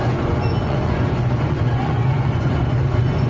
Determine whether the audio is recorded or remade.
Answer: remade